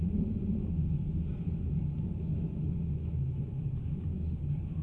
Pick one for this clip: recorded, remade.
recorded